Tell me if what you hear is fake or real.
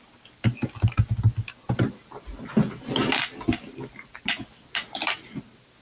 real